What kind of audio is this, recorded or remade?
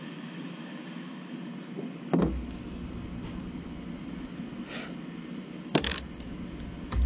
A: recorded